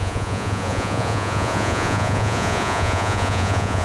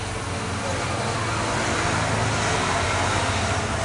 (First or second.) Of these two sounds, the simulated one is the first